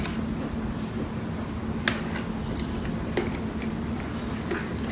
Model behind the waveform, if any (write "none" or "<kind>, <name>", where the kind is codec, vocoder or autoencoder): none